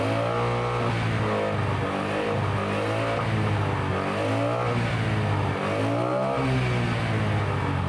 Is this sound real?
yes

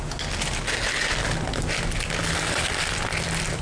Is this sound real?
yes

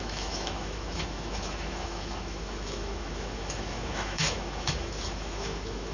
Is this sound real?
no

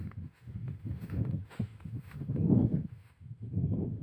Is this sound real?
no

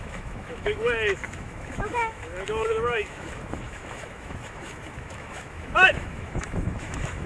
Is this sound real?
no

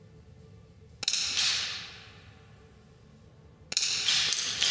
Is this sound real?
yes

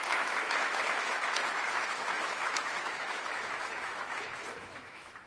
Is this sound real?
no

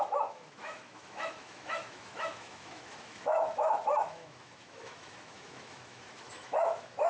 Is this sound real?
no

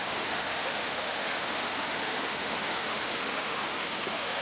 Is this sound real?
no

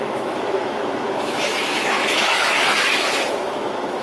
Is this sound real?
no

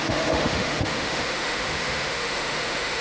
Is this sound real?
no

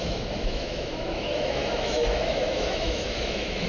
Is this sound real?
no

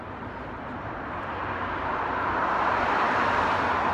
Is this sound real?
yes